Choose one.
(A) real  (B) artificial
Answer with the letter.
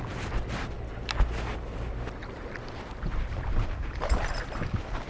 A